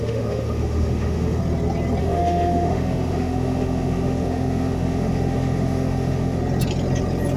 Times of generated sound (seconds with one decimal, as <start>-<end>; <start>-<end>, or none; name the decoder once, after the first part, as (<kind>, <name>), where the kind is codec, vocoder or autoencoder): 0.0-1.4 (autoencoder, DAC-VAE); 2.0-6.4